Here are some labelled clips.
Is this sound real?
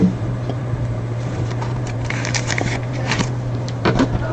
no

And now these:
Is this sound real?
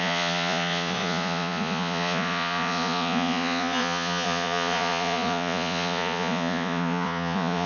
no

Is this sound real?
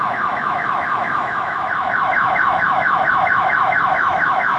no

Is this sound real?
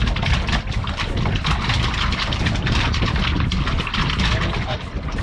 yes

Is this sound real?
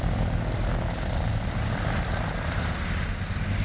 yes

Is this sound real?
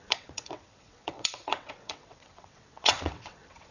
no